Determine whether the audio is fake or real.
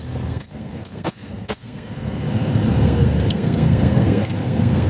fake